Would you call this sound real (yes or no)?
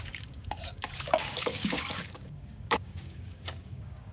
no